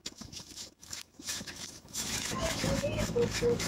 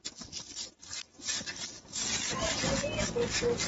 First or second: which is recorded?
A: second